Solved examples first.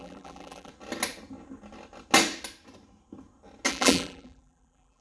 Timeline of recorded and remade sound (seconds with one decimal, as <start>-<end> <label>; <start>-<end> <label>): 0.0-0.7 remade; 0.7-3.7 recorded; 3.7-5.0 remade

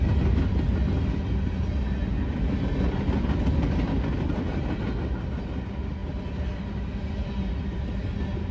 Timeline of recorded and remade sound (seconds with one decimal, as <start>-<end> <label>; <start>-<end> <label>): 0.0-8.5 recorded

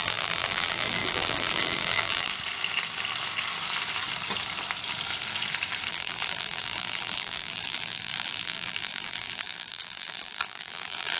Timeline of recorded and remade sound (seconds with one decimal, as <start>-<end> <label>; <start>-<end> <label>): 0.0-2.3 remade; 2.3-5.9 recorded; 5.9-11.2 remade

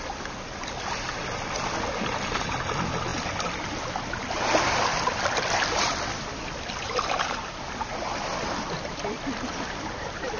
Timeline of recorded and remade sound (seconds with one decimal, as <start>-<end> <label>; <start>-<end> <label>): 0.0-3.1 remade; 3.1-5.0 recorded; 5.0-10.4 remade